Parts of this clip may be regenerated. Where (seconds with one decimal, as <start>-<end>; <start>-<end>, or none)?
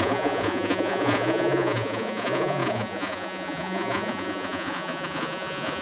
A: 0.0-5.8